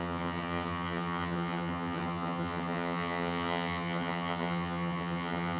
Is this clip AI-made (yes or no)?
yes